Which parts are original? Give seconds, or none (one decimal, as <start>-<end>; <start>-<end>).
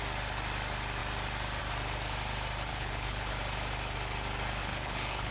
0.0-2.7; 3.4-4.6